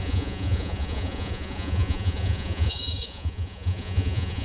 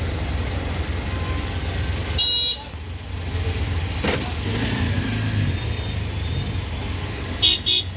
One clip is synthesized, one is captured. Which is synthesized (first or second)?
first